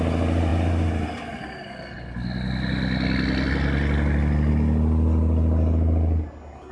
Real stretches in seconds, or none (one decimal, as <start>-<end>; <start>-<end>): 0.0-6.7

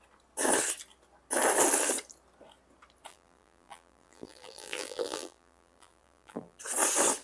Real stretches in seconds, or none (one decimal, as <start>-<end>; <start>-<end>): 0.0-3.1; 6.6-7.2

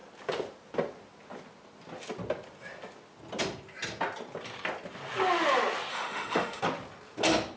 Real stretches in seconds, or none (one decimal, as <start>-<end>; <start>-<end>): 0.0-5.9; 6.6-7.6

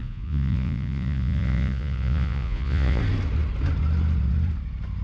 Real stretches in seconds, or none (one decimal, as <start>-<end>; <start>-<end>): 3.0-5.0

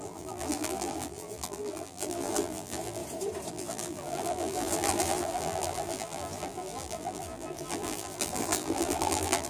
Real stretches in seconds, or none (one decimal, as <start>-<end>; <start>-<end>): 3.0-3.5